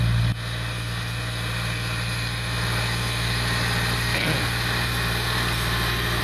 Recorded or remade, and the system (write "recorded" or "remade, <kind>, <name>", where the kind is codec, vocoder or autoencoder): recorded